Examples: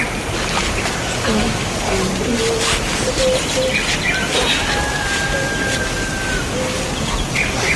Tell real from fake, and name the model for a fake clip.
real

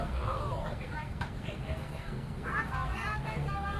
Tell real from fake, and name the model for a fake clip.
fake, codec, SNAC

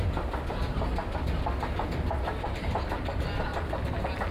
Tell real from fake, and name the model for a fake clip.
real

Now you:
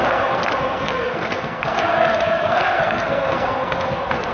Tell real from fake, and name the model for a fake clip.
fake, codec, SNAC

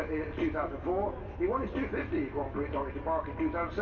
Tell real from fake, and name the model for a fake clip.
real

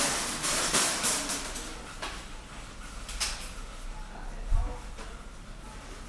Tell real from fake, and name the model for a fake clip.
real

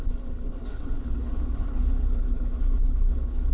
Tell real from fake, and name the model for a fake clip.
fake, codec, HILCodec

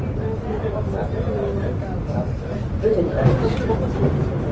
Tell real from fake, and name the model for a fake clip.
real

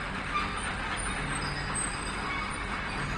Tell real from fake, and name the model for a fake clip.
real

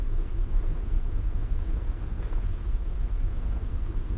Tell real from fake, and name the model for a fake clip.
fake, codec, SNAC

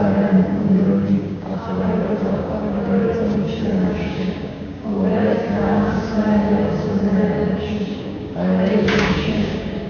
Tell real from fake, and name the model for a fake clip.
fake, codec, DAC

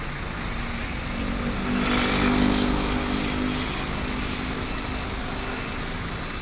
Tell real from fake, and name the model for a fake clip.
real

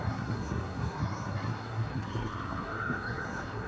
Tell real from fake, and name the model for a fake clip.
fake, codec, SNAC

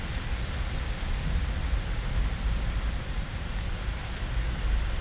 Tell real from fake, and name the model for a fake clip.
real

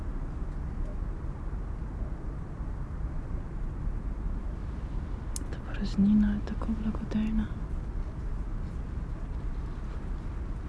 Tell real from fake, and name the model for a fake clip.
real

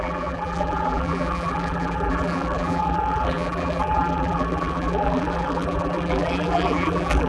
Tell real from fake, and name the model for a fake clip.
fake, vocoder, BigVGAN v2